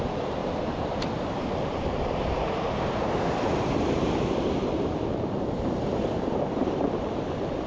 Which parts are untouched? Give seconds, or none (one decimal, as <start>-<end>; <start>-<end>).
none